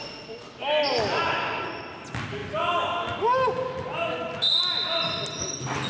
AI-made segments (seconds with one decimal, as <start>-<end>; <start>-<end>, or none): none